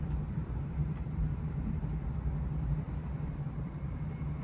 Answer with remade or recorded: remade